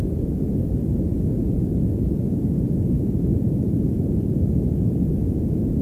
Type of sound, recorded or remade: remade